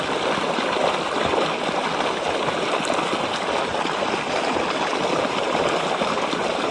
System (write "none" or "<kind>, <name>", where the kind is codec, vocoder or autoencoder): none